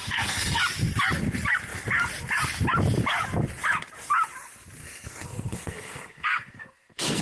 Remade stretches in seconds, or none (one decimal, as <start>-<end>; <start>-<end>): 0.0-0.6; 4.8-7.2